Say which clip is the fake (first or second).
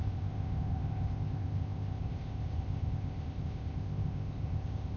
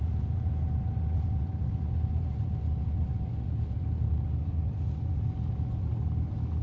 first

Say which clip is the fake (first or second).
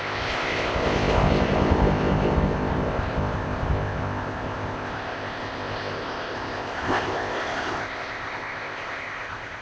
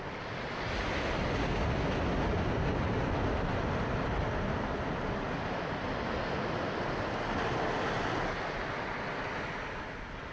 first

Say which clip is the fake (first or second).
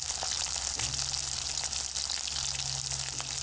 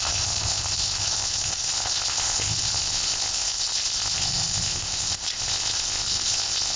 second